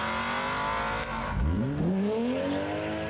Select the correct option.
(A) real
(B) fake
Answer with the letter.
A